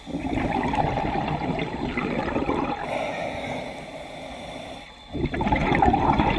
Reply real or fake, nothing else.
real